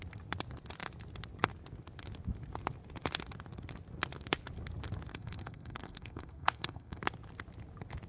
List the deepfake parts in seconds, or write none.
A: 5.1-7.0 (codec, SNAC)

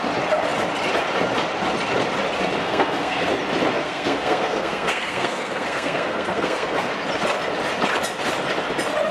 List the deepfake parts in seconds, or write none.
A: 2.6-3.3 (codec, SNAC); 3.7-6.9

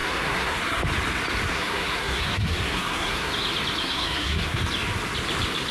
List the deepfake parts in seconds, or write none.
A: 0.0-0.8 (codec, SNAC); 1.5-3.3; 3.8-4.6

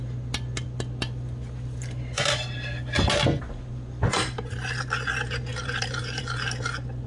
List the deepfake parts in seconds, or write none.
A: 5.5-6.2 (vocoder, BigVGAN v2)

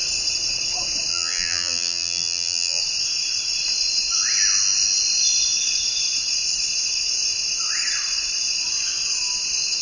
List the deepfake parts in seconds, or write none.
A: 1.1-2.8 (vocoder, BigVGAN v2)

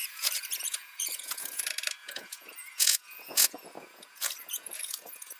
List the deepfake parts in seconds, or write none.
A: 0.0-1.6 (vocoder, Vocos); 2.0-5.4